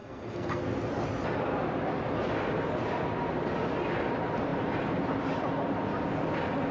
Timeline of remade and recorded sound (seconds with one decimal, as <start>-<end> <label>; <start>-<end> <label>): 0.0-0.6 remade; 0.6-6.7 recorded